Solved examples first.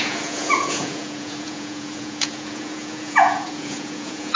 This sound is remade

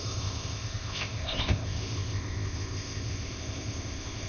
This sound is remade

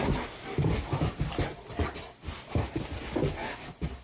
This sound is recorded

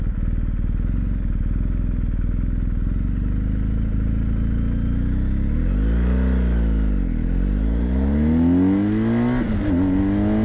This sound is recorded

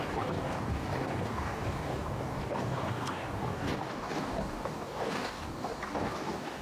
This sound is remade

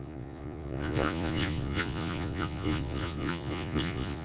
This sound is remade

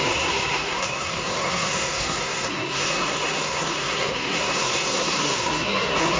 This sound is remade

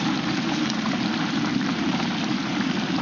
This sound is remade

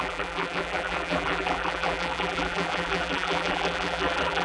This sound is remade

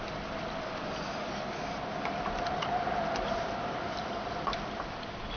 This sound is recorded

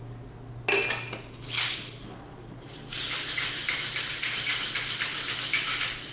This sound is recorded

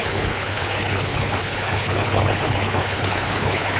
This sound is remade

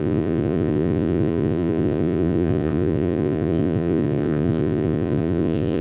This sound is remade